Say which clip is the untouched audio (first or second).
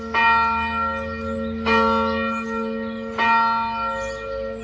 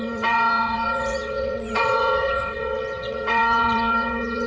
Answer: first